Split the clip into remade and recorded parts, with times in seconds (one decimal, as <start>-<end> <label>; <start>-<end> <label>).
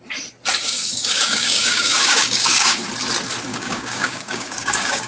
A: 0.0-0.6 recorded; 0.6-2.9 remade; 2.9-3.5 recorded; 3.5-5.1 remade